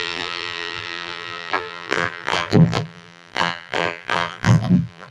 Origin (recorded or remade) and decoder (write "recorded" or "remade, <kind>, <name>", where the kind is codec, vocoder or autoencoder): remade, vocoder, BigVGAN v2